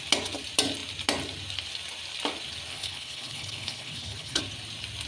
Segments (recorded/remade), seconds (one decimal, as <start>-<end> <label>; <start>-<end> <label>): 0.0-2.7 recorded; 2.7-4.4 remade; 4.4-5.1 recorded